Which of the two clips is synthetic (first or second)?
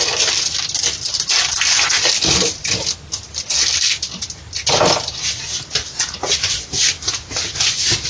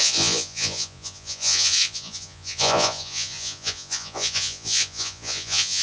second